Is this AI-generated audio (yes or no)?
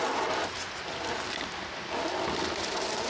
no